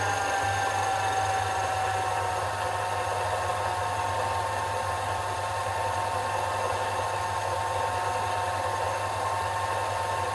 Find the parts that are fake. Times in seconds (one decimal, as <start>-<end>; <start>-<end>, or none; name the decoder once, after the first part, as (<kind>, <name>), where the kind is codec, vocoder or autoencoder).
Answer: none